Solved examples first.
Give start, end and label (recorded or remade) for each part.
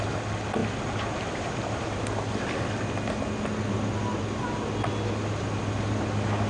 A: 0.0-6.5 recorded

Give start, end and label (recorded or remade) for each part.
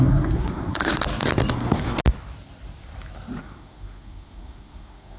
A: 0.0-0.9 remade; 0.9-1.5 recorded; 1.5-2.0 remade; 2.0-3.4 recorded; 3.4-5.2 remade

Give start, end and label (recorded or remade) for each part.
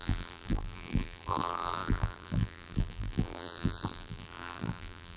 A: 0.0-5.2 remade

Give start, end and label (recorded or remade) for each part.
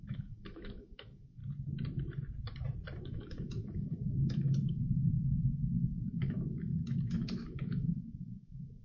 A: 0.0-1.4 remade; 1.4-3.0 recorded; 3.0-8.8 remade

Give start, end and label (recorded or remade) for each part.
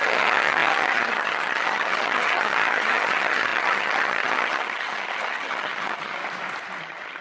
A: 0.0-6.2 remade; 6.2-6.8 recorded; 6.8-7.2 remade